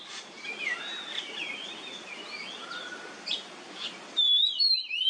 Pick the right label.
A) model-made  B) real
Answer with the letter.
B